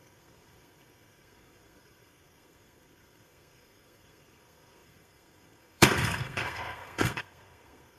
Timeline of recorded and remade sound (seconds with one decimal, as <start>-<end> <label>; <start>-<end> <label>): 0.0-8.0 remade